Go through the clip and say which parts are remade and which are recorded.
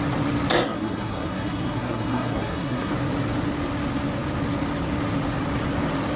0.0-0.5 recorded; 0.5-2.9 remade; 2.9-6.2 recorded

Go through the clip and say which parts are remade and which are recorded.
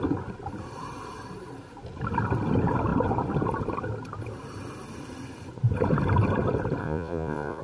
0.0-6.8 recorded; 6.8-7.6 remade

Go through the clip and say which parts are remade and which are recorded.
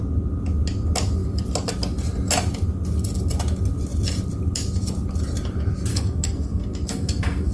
0.0-5.9 recorded; 5.9-7.5 remade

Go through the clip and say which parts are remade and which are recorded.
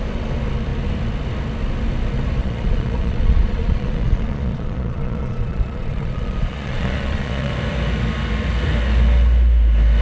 0.0-2.4 recorded; 2.4-7.5 remade; 7.5-10.0 recorded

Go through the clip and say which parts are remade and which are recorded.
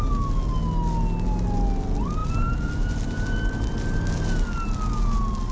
0.0-2.2 recorded; 2.2-4.1 remade; 4.1-5.5 recorded